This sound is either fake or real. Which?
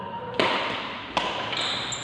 real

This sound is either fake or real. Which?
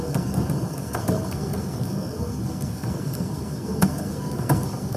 fake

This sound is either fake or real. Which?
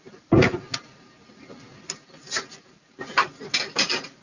real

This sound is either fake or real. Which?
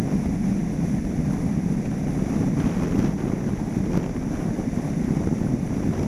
real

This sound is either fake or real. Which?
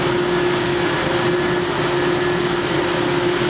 real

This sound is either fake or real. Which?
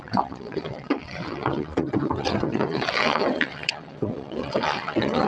fake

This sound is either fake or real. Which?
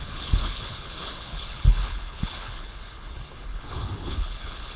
fake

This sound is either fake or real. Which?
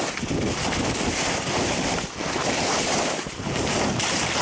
real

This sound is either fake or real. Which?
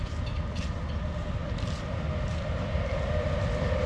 real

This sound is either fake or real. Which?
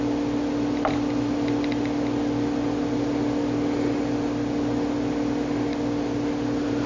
real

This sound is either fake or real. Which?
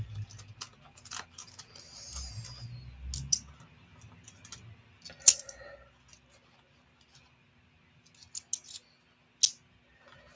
real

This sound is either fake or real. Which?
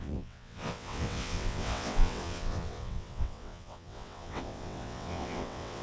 fake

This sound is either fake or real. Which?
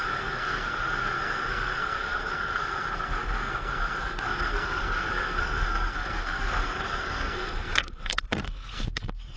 fake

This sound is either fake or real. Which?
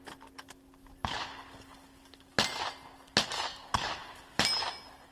real